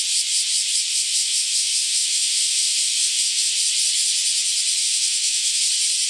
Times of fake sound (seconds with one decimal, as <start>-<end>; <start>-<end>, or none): 0.9-3.5; 4.8-5.6